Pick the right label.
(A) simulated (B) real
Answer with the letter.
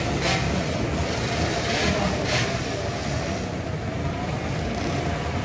B